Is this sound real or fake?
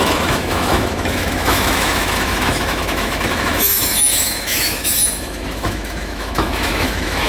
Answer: fake